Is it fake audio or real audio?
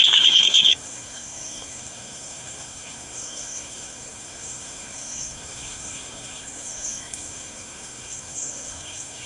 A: fake